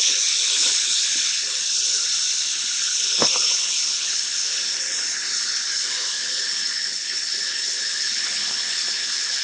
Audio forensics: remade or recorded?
remade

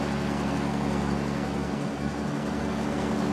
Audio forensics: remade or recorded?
remade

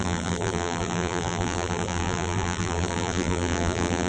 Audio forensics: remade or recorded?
remade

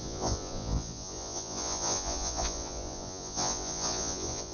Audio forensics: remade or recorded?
remade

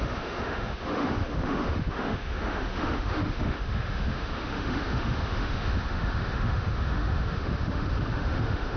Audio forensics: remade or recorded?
remade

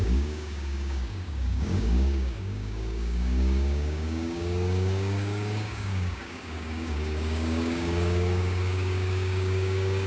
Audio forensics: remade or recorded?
remade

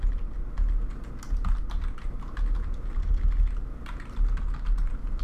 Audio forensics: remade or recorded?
recorded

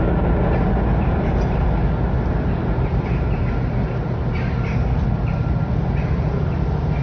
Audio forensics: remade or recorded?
recorded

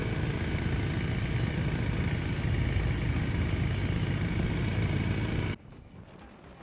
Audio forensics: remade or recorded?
recorded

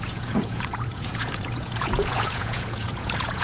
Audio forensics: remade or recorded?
remade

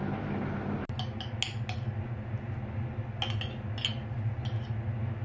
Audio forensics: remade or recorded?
recorded